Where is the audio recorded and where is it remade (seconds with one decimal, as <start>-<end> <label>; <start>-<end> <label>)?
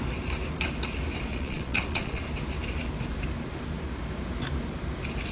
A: 0.0-1.3 recorded; 1.3-2.2 remade; 2.2-5.3 recorded